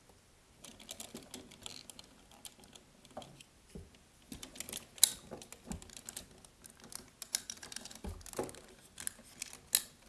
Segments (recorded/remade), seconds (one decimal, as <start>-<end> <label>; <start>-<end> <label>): 0.0-10.1 recorded